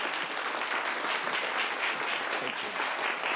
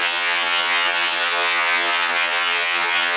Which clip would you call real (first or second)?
first